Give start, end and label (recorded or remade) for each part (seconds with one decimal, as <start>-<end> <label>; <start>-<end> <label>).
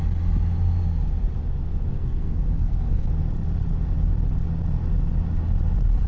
0.0-1.9 recorded; 1.9-3.1 remade; 3.1-6.1 recorded